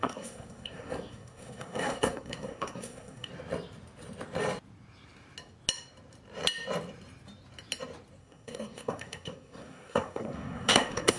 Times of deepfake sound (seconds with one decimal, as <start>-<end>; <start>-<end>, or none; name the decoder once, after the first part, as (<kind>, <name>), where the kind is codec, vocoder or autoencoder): 0.0-3.3 (codec, SNAC); 8.2-11.2